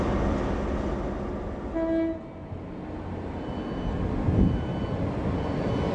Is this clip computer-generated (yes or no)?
no